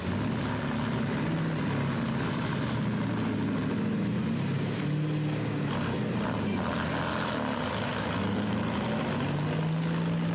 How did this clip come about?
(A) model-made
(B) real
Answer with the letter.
B